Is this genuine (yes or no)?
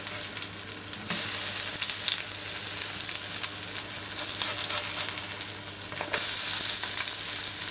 yes